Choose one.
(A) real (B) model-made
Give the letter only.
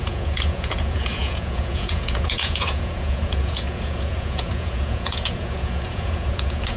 B